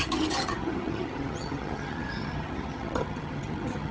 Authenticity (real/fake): fake